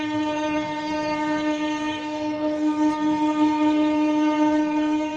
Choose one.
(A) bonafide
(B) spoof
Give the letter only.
B